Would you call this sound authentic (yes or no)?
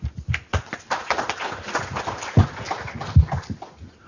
yes